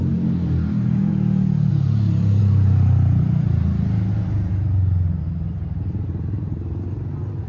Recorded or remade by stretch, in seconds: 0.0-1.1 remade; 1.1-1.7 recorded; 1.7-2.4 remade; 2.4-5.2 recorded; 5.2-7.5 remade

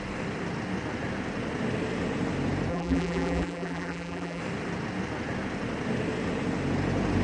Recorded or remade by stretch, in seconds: 0.0-2.7 recorded; 2.7-4.4 remade; 4.4-7.2 recorded

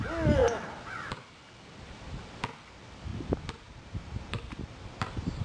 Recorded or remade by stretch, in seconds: 0.0-3.1 recorded; 3.1-5.0 remade; 5.0-5.4 recorded

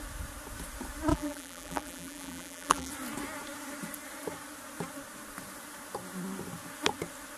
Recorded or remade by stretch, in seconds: 0.0-1.1 recorded; 1.1-2.9 remade; 2.9-7.4 recorded

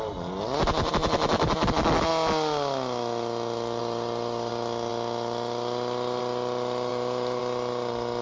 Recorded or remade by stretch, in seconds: 0.0-3.8 recorded; 3.8-4.5 remade; 4.5-6.9 recorded; 6.9-7.4 remade; 7.4-8.2 recorded

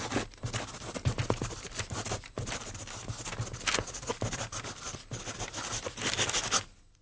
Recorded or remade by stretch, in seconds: 0.0-0.7 recorded; 0.7-2.9 remade; 2.9-7.0 recorded

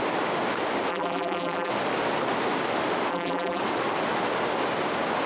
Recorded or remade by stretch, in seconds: 0.0-0.9 recorded; 0.9-1.7 remade; 1.7-3.1 recorded; 3.1-3.6 remade; 3.6-5.3 recorded